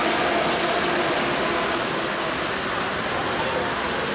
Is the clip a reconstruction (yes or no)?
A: no